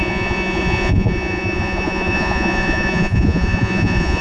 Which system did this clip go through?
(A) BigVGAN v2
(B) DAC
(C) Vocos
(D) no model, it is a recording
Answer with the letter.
C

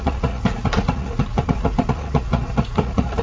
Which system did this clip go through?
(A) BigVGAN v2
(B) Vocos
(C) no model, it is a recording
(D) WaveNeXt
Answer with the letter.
B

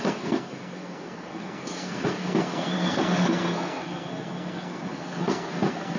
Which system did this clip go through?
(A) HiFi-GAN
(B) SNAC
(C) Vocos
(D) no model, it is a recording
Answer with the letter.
B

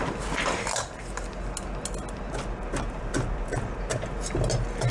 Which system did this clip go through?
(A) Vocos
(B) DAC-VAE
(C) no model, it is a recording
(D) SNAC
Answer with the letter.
C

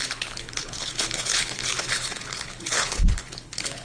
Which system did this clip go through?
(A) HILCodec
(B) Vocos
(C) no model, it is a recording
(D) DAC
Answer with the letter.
A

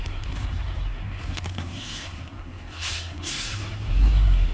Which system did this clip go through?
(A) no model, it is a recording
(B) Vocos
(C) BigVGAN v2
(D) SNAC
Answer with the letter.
D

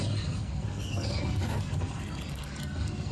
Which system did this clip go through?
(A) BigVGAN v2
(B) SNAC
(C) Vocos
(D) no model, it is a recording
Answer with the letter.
B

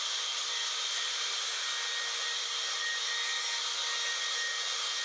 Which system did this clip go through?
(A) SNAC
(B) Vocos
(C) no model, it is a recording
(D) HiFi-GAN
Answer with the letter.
C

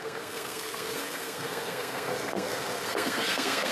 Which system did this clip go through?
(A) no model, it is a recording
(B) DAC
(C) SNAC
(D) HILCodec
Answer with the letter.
C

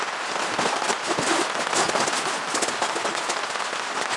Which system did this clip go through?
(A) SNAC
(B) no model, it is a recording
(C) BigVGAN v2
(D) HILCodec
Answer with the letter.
B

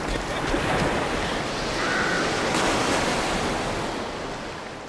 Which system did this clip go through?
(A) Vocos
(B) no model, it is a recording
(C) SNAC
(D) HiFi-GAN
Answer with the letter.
B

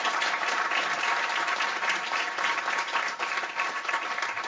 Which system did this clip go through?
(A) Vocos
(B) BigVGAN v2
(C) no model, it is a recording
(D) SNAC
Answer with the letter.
B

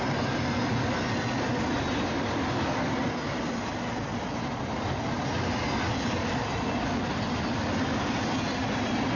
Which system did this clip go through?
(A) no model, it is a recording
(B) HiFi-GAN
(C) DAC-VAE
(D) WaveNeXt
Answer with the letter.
A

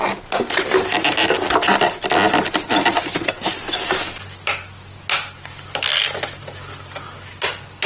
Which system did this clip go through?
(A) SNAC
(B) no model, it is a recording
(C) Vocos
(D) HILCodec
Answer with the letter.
B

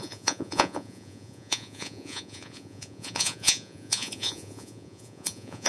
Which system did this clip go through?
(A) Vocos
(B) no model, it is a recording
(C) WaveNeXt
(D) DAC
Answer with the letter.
A